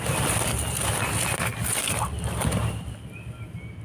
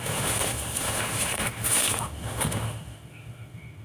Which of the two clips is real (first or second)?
first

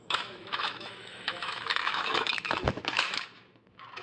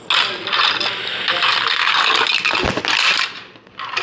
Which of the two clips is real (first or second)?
second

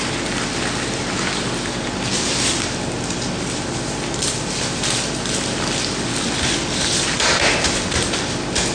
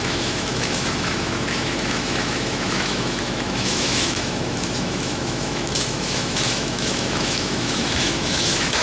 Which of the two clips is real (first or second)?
first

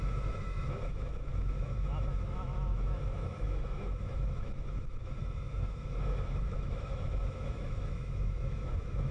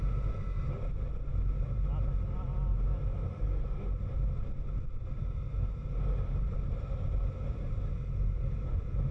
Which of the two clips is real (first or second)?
second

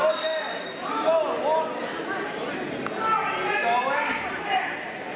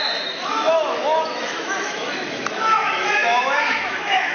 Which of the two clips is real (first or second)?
first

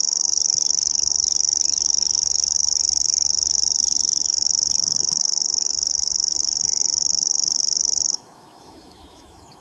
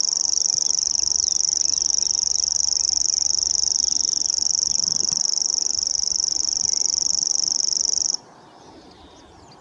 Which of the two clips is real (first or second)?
second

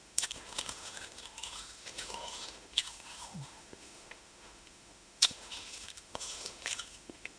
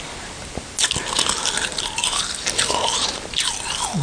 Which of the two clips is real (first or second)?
second